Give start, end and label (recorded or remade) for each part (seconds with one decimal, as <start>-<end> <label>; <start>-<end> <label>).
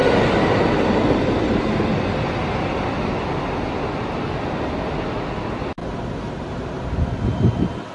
0.0-7.9 recorded